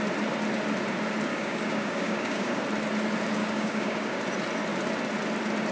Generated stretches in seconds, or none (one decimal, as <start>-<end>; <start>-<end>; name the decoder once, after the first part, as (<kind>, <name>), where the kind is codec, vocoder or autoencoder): 1.3-2.6 (codec, DAC); 3.4-4.2